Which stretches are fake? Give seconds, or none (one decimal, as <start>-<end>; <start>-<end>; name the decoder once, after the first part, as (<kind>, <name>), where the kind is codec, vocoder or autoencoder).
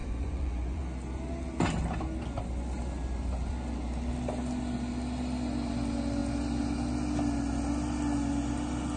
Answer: 0.0-0.8 (vocoder, Vocos)